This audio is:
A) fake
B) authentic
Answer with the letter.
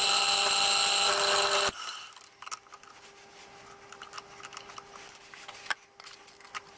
B